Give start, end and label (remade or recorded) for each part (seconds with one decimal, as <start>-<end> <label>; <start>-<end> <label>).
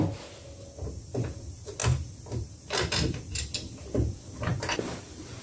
0.0-5.4 recorded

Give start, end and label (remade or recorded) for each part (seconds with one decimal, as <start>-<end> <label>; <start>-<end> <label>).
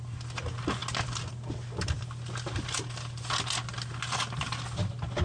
0.0-5.2 recorded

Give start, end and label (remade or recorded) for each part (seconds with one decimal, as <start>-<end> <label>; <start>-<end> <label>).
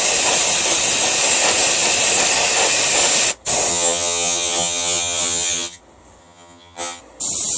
0.0-3.7 recorded; 3.7-5.8 remade; 5.8-6.2 recorded; 6.2-7.0 remade; 7.0-7.6 recorded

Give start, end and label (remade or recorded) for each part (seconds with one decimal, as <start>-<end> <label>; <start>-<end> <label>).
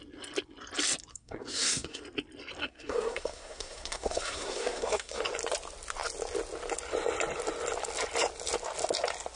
0.0-1.1 recorded; 1.1-2.0 remade; 2.0-2.6 recorded; 2.6-5.2 remade; 5.2-9.4 recorded